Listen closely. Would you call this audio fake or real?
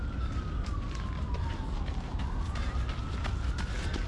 real